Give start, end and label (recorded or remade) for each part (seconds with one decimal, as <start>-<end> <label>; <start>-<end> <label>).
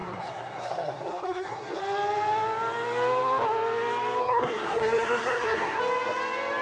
0.0-1.8 remade; 1.8-4.2 recorded; 4.2-5.8 remade; 5.8-6.6 recorded